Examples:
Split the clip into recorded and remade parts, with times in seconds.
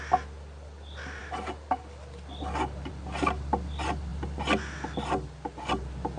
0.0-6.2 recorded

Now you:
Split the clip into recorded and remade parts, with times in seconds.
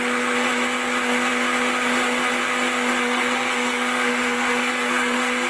0.0-3.0 recorded; 3.0-5.5 remade